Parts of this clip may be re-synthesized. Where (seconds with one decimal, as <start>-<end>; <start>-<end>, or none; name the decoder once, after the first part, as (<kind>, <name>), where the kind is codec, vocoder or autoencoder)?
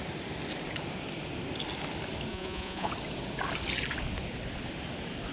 2.3-2.9 (vocoder, Vocos)